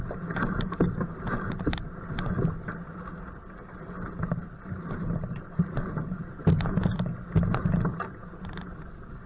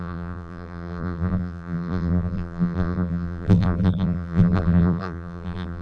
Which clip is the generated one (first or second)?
second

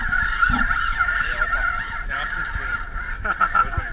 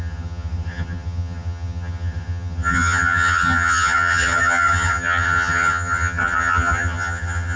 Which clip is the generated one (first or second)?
second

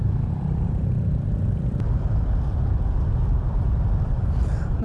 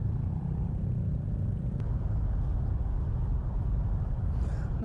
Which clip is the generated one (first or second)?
first